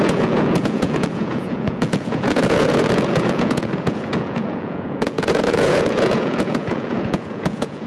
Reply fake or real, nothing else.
fake